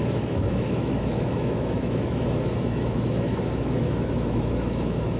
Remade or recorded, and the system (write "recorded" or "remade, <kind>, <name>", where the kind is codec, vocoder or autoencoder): remade, autoencoder, DAC-VAE